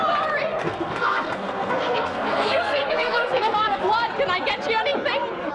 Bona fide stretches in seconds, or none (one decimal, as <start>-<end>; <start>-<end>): 0.0-0.5; 3.8-5.5